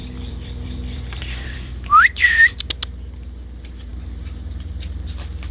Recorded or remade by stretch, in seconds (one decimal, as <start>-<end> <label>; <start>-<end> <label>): 0.0-2.6 remade; 2.6-5.5 recorded